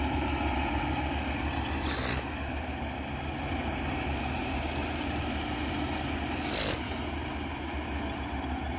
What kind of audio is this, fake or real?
real